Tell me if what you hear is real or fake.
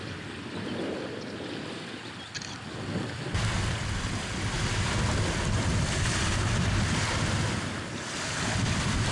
real